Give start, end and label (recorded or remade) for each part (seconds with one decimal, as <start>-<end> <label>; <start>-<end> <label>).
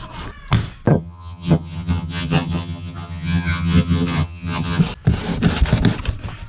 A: 0.0-0.9 recorded; 0.9-4.8 remade; 4.8-6.5 recorded